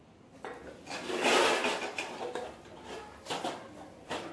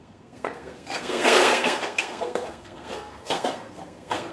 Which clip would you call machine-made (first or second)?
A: second